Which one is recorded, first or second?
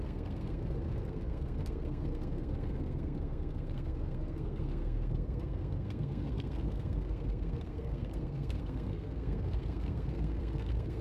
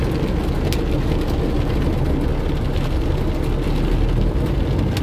second